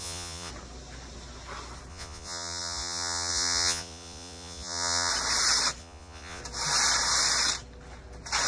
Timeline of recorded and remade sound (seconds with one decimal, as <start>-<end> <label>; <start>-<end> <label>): 0.0-0.5 remade; 0.5-1.9 recorded; 1.9-5.1 remade; 5.1-5.8 recorded; 5.8-6.4 remade; 6.4-8.5 recorded